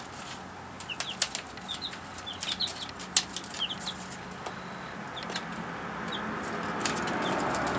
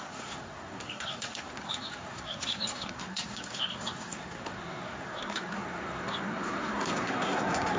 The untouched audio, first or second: first